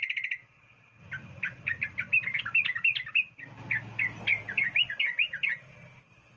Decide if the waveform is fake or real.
real